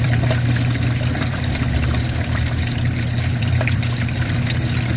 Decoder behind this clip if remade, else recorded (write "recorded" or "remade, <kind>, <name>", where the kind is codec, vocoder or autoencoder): remade, vocoder, BigVGAN v2